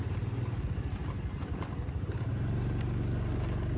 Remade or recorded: recorded